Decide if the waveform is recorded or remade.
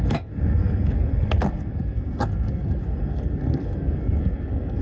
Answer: remade